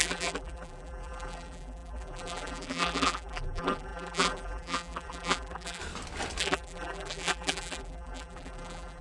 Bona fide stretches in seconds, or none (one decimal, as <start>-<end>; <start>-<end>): 5.8-6.4